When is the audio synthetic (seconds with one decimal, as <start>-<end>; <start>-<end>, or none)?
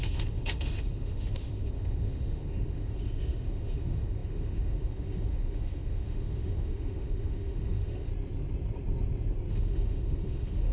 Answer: 0.0-8.1; 9.5-10.7